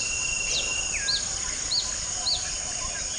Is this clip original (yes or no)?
yes